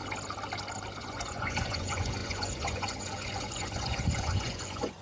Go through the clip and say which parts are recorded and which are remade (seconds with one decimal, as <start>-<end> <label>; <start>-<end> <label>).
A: 0.0-1.0 recorded; 1.0-5.0 remade